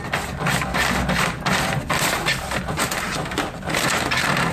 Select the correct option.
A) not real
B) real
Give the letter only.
B